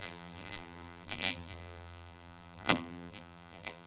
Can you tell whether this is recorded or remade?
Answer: remade